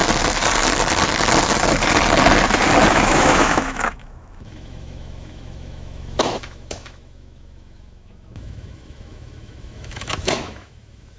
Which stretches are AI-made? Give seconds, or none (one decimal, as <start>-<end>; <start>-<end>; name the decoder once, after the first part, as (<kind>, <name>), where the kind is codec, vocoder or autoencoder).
2.9-11.2 (autoencoder, DAC-VAE)